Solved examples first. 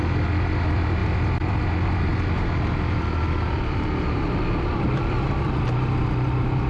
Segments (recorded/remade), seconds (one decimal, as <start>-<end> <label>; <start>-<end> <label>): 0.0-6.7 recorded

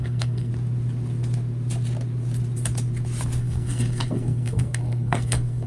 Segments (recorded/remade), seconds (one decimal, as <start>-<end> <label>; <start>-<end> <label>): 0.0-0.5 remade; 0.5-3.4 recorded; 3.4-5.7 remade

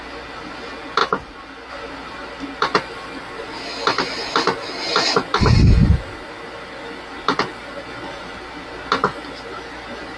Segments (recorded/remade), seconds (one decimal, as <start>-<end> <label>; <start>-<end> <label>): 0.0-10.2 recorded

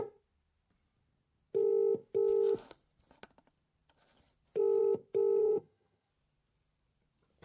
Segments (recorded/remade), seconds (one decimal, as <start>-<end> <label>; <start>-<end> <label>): 0.0-5.4 recorded; 5.4-6.1 remade; 6.1-7.4 recorded